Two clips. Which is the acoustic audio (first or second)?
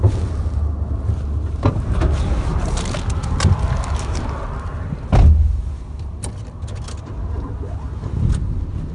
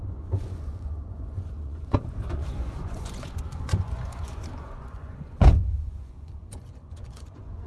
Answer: first